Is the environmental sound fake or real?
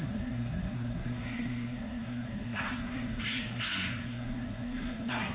fake